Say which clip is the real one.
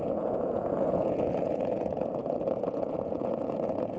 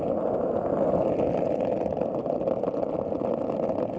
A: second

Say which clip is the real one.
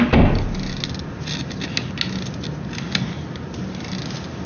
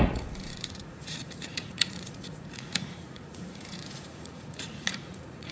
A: first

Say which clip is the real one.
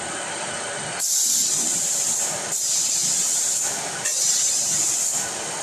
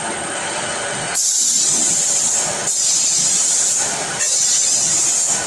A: second